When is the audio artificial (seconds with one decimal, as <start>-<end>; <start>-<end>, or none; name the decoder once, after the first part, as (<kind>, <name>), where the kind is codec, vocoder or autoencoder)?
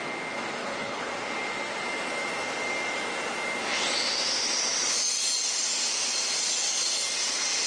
0.6-1.1 (codec, HILCodec)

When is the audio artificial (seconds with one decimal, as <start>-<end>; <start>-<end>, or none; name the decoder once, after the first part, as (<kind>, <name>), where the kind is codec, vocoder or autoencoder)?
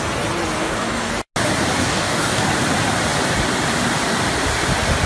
0.6-1.1 (codec, DAC); 1.8-2.4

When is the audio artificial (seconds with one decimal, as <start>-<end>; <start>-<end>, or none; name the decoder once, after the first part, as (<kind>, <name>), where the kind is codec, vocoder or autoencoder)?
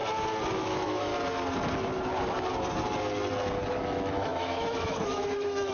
0.5-1.1 (autoencoder, DAC-VAE); 3.7-5.7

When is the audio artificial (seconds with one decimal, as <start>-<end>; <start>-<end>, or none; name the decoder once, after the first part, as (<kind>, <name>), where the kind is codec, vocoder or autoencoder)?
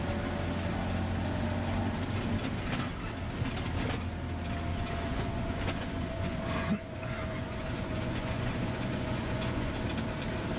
4.7-9.7 (vocoder, Vocos)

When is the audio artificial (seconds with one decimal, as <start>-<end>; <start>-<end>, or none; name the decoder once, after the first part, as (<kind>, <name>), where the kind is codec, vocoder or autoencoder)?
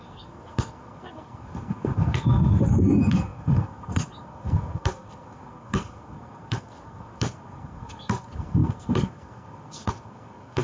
0.0-10.6 (codec, SNAC)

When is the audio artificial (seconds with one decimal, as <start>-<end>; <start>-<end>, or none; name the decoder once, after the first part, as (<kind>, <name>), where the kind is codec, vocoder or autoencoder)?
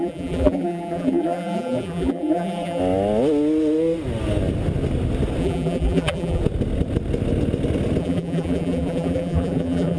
0.0-2.8 (vocoder, BigVGAN v2); 5.4-6.4; 8.0-10.0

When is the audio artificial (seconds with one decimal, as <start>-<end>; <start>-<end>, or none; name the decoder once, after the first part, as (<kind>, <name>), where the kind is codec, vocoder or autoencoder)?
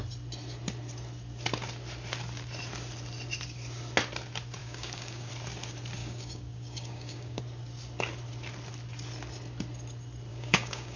4.6-5.3 (codec, DAC); 6.0-7.4; 10.3-11.0